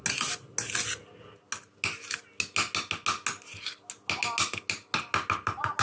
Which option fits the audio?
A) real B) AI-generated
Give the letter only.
A